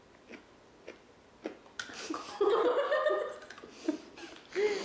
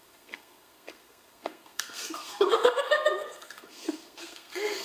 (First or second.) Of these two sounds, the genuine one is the first